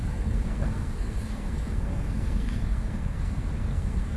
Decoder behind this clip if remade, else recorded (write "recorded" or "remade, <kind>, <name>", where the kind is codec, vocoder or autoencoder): remade, codec, SNAC